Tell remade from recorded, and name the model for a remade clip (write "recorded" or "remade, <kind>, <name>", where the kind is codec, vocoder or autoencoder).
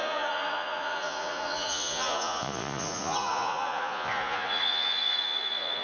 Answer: remade, vocoder, Vocos